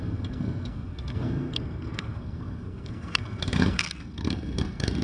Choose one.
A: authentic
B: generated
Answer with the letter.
B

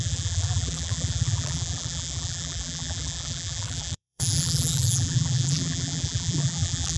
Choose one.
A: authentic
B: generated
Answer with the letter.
B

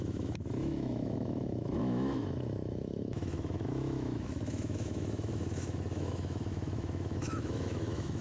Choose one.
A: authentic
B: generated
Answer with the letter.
B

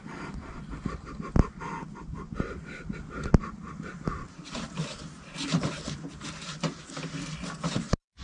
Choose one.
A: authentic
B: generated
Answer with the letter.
A